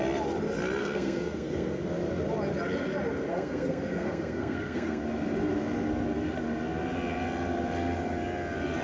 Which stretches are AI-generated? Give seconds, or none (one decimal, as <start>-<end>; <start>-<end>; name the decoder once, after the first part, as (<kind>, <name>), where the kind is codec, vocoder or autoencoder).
0.8-1.8 (codec, SNAC); 3.3-5.0